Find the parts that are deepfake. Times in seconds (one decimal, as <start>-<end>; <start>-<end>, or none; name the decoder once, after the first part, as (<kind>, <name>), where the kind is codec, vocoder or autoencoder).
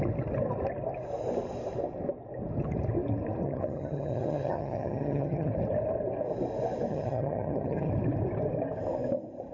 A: 3.4-5.5 (vocoder, HiFi-GAN); 6.9-7.9